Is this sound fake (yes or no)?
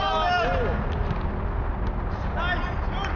no